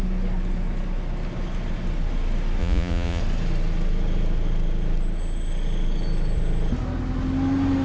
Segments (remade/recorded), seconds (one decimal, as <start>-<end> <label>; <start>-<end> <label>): 0.0-2.6 recorded; 2.6-3.2 remade; 3.2-7.8 recorded